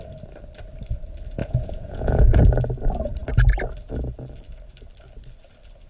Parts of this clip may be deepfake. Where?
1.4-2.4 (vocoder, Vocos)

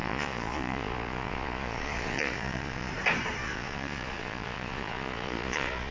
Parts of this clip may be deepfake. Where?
0.0-2.9 (vocoder, Vocos); 3.4-5.9

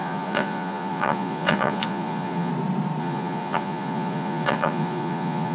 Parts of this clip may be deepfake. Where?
0.0-2.5 (vocoder, Vocos); 3.0-5.5